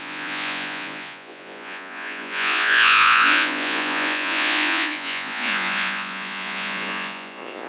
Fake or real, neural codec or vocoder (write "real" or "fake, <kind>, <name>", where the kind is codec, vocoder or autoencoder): fake, vocoder, Vocos